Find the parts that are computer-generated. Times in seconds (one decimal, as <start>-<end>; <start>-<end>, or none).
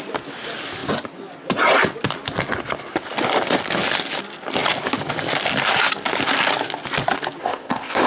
7.4-8.1